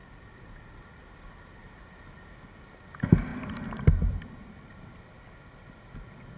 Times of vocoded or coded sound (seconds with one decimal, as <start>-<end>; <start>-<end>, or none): 0.0-1.0; 3.3-5.0